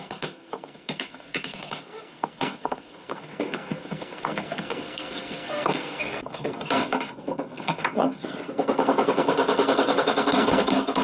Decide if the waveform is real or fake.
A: fake